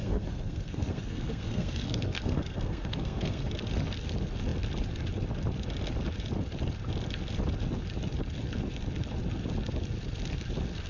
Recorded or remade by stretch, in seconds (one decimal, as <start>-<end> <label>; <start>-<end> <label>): 0.0-3.5 remade; 3.5-10.9 recorded